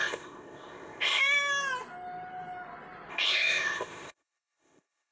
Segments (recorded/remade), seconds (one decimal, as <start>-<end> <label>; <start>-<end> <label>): 0.0-1.2 remade; 1.2-3.1 recorded; 3.1-5.1 remade